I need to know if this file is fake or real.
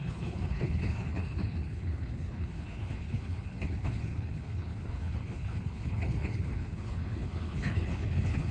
fake